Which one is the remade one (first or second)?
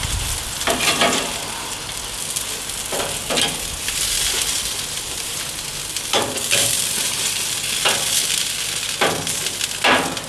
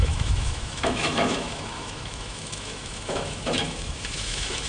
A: second